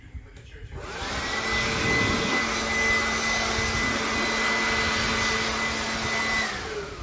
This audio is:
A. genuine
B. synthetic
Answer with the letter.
A